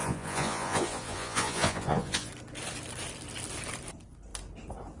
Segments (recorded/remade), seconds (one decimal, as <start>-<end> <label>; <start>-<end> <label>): 0.0-2.3 remade; 2.3-5.0 recorded